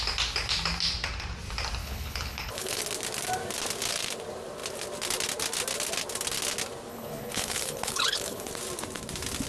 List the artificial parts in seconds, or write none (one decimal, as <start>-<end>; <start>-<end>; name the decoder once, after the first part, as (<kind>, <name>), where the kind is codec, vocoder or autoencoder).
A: 1.8-2.8 (codec, HILCodec); 6.9-8.5